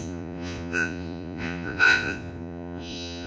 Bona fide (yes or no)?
no